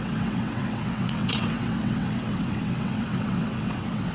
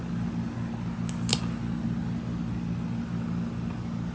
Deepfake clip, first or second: first